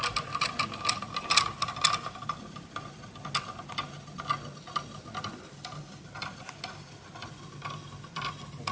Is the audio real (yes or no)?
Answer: yes